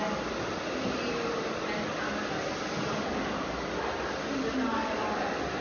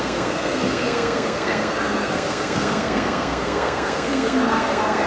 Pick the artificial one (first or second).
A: second